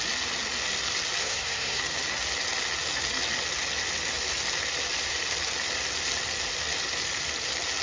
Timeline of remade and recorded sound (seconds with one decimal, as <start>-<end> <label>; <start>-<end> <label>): 0.0-1.2 recorded; 1.2-1.8 remade; 1.8-7.8 recorded